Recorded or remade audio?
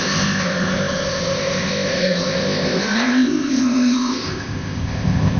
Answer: remade